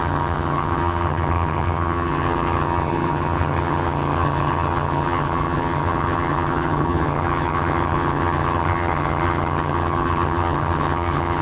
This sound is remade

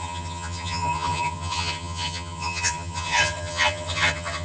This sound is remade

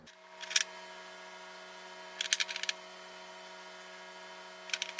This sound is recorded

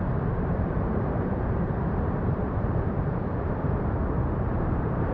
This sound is remade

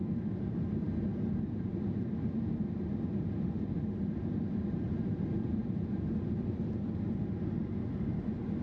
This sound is recorded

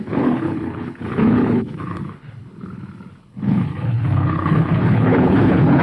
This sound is remade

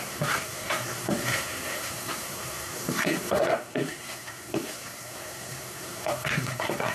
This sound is remade